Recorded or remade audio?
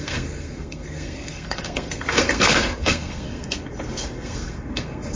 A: remade